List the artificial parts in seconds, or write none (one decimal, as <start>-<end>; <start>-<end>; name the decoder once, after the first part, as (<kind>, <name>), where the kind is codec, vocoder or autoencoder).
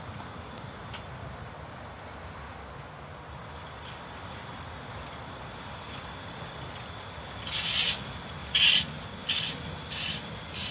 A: none